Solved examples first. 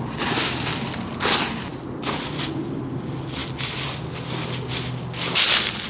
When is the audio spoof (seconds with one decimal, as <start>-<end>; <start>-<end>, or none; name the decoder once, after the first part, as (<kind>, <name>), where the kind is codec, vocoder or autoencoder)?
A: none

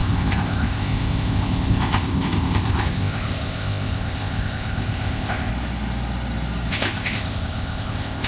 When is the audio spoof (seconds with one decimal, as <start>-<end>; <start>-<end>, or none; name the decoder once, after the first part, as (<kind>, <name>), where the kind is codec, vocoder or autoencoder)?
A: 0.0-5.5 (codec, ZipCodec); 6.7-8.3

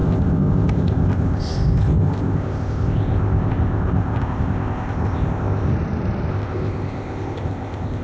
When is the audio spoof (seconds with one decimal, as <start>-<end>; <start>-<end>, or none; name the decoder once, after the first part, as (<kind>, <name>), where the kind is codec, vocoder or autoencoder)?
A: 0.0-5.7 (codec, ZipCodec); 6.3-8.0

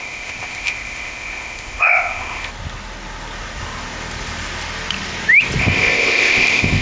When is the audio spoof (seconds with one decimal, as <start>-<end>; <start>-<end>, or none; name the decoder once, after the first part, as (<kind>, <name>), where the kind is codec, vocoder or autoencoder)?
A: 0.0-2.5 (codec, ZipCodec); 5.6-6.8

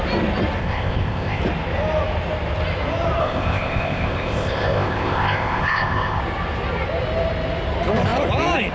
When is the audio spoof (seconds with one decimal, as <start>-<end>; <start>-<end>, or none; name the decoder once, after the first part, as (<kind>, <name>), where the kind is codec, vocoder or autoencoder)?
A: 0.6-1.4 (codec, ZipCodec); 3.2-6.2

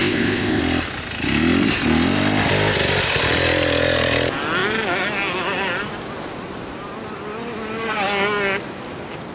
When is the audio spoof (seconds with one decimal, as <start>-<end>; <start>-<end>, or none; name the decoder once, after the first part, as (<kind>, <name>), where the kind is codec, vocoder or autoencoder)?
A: 0.0-0.6 (codec, ZipCodec)

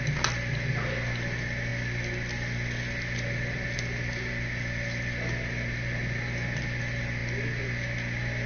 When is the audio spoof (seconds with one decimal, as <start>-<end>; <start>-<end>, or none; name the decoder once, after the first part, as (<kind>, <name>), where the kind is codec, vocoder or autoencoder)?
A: none

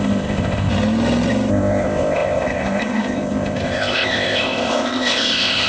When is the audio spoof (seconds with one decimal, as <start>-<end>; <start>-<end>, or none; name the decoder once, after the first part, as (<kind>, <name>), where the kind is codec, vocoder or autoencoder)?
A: 0.0-0.7 (codec, ZipCodec); 1.5-5.7